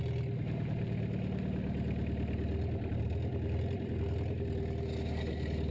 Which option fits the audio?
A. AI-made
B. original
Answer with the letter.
B